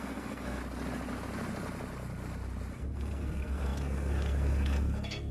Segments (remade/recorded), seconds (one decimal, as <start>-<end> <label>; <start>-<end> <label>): 0.0-0.6 remade; 0.6-2.7 recorded; 2.7-5.3 remade